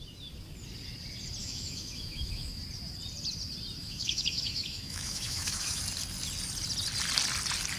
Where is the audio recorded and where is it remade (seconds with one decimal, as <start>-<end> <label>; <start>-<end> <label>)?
0.0-1.4 recorded; 1.4-2.6 remade; 2.6-3.8 recorded; 3.8-5.8 remade; 5.8-7.8 recorded